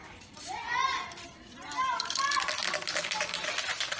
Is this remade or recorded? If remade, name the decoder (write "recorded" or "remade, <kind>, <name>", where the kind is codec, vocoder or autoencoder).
remade, vocoder, BigVGAN v2